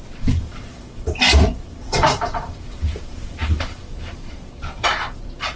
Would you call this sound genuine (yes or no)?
no